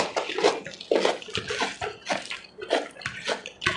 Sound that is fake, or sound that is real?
real